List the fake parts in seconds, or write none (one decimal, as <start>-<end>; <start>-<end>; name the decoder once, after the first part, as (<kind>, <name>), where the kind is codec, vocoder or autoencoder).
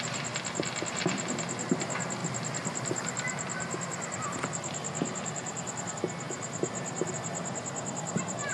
none